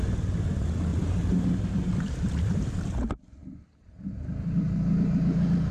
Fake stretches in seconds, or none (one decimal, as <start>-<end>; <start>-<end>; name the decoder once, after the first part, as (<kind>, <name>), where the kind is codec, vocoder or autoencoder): 0.9-2.8 (vocoder, BigVGAN v2); 3.4-4.2